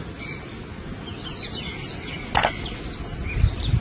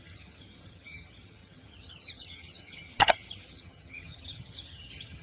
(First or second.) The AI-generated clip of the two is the second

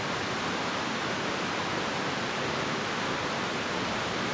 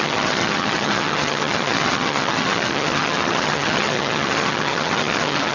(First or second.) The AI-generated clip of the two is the second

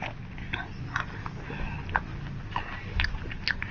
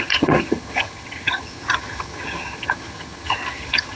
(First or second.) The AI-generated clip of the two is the second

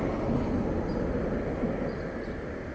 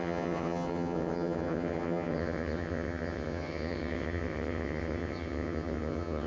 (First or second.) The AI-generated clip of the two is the second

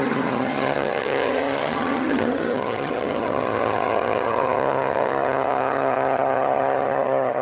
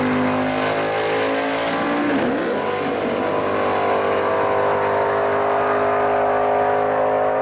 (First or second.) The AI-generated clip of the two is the first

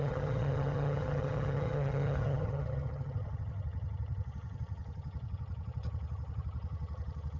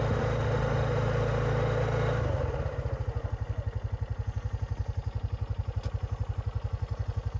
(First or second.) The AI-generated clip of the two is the first